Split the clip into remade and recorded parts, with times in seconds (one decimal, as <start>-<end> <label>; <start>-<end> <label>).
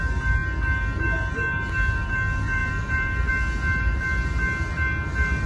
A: 0.0-2.6 recorded; 2.6-3.3 remade; 3.3-5.5 recorded